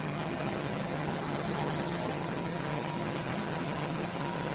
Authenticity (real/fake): fake